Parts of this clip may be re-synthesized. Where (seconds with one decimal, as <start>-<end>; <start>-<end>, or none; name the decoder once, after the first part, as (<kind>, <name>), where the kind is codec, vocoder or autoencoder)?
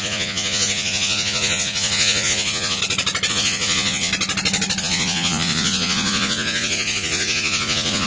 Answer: 0.0-2.8 (vocoder, Vocos); 3.3-4.1; 4.8-8.1